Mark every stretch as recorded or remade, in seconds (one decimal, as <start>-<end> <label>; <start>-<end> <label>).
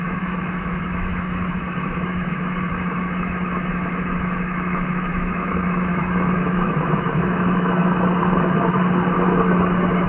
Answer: 0.0-7.8 remade; 7.8-9.5 recorded; 9.5-10.1 remade